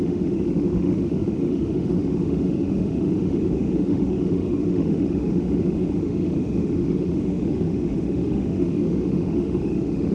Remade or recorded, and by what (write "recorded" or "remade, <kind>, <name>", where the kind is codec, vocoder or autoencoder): remade, autoencoder, DAC-VAE